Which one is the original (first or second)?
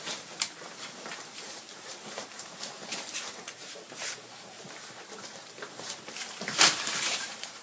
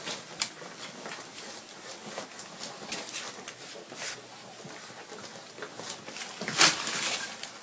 second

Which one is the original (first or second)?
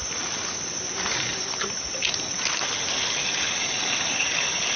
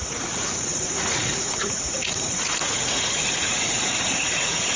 first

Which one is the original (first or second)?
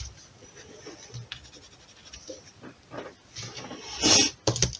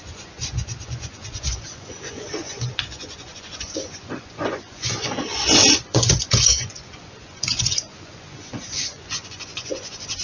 first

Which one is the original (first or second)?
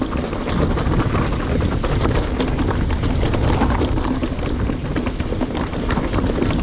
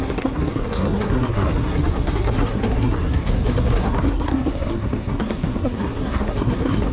first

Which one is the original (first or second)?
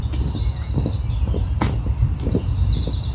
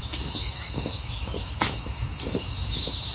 first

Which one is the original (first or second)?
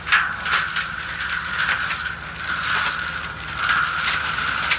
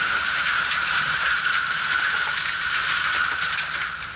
first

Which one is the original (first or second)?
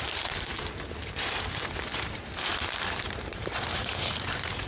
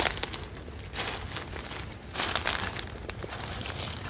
second